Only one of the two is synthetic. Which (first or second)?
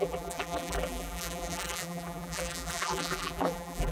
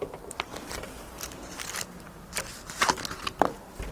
first